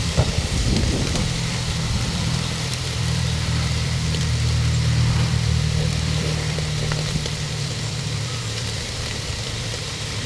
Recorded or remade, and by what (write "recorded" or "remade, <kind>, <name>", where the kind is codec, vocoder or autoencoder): remade, vocoder, BigVGAN v2